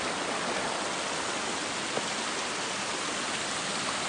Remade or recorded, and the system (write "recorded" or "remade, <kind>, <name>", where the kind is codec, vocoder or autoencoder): recorded